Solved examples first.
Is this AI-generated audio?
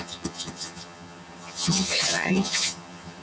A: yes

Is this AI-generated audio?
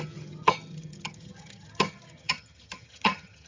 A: yes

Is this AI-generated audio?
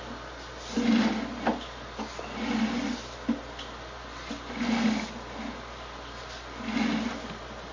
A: no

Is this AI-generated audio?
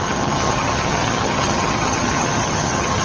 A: yes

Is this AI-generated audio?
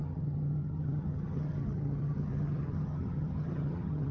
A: yes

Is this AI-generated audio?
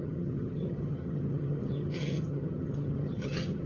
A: yes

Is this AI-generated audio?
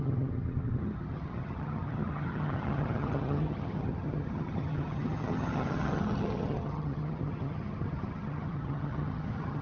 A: yes